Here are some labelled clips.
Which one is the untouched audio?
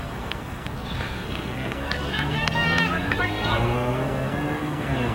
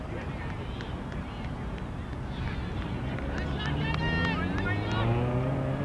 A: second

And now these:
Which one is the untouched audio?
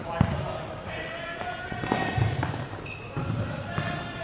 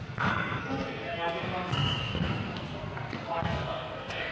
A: first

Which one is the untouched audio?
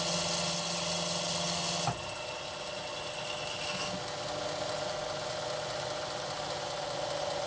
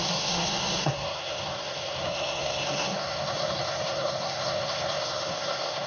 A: first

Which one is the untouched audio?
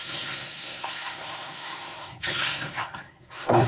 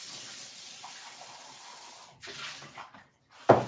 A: second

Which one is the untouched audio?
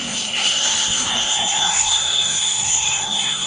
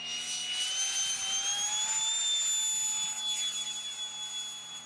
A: second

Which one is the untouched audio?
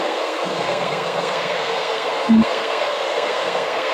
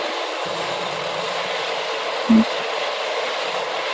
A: second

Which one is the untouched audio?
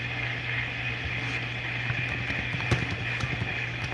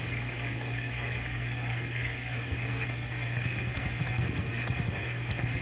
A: first